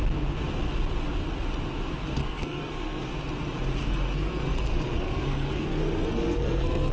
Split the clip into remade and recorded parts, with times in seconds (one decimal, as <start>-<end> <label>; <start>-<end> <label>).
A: 0.0-2.2 recorded; 2.2-3.1 remade; 3.1-3.8 recorded; 3.8-6.9 remade